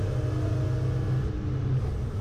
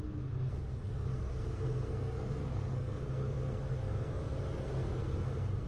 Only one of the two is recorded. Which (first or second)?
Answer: first